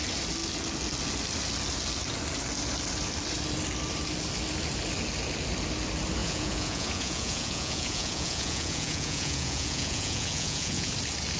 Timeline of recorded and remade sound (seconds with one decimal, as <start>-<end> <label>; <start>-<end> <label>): 0.0-6.2 recorded; 6.2-10.9 remade; 10.9-11.4 recorded